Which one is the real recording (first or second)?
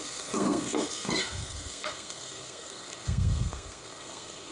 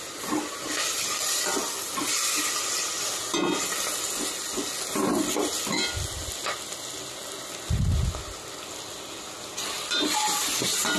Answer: second